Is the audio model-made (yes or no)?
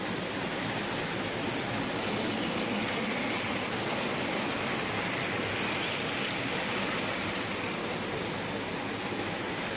no